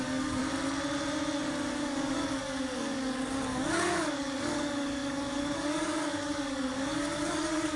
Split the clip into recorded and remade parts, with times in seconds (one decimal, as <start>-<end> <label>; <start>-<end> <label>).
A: 0.0-0.4 remade; 0.4-1.7 recorded; 1.7-7.8 remade